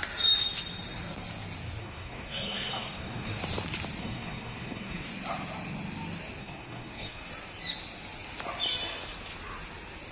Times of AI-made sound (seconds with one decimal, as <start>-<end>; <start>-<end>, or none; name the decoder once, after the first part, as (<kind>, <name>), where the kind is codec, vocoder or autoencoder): 1.8-3.4 (codec, SNAC); 4.0-5.1; 6.4-7.3